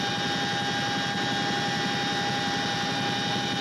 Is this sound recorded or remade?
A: recorded